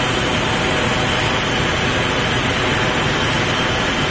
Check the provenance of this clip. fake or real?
real